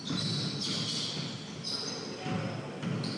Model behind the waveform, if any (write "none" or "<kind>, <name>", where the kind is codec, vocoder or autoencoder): none